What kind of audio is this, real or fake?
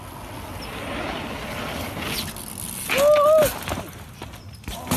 real